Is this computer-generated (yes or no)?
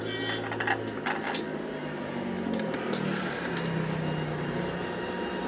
no